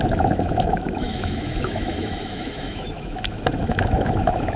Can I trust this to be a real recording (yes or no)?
no